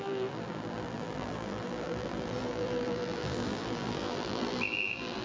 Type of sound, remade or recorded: remade